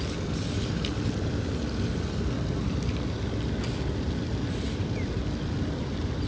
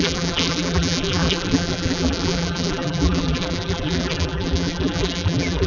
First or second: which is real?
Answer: first